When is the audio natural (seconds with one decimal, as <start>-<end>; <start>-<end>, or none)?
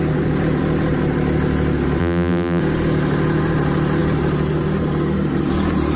0.0-2.0; 2.6-6.0